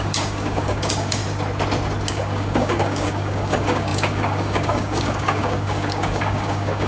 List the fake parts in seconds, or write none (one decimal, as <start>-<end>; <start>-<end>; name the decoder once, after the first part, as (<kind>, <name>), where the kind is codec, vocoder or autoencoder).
0.0-1.2 (codec, DAC); 2.1-6.9